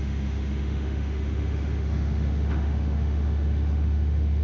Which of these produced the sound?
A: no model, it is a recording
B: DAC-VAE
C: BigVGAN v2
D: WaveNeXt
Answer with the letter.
B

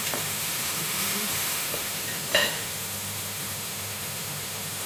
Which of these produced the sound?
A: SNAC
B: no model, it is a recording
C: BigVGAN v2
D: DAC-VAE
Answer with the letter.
D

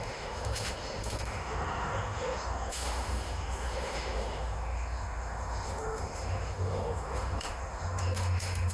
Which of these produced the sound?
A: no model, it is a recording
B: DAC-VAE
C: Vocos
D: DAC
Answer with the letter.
B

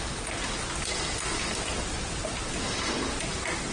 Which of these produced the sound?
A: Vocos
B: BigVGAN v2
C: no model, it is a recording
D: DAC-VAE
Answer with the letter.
C